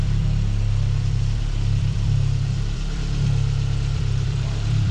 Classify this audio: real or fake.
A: fake